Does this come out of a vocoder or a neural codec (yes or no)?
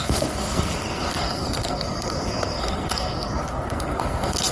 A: yes